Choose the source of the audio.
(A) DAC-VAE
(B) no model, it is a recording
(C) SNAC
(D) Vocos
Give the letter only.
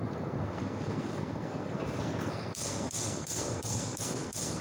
C